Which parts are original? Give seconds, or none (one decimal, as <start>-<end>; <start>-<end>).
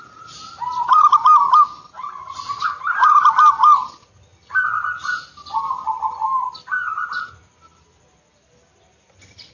0.0-9.5